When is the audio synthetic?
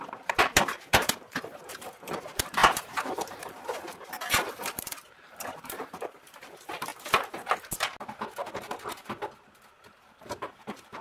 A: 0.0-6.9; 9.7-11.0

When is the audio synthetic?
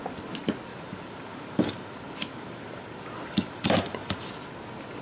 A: 0.7-1.9; 2.3-4.3